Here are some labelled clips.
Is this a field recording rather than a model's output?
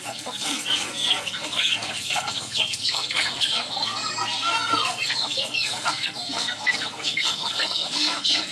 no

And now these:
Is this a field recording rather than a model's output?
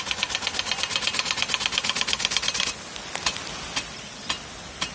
yes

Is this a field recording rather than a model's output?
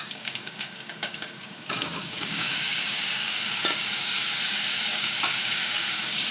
no